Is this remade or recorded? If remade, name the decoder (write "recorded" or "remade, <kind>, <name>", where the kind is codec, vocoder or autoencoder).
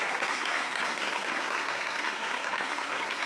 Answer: remade, codec, SNAC